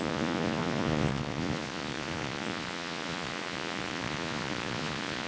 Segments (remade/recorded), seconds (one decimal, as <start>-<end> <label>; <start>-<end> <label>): 0.0-5.3 remade